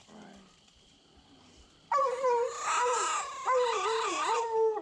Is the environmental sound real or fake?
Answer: real